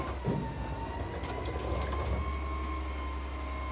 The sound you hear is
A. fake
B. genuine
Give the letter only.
B